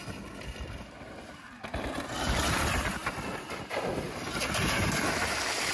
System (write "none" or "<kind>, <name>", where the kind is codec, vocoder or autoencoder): none